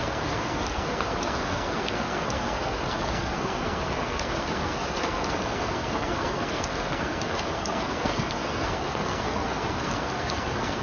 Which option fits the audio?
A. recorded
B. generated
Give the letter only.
B